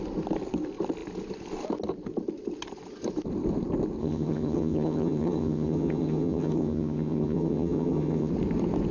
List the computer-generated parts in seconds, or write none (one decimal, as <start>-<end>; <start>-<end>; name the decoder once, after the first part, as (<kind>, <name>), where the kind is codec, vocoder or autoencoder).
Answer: 4.0-8.3 (vocoder, HiFi-GAN)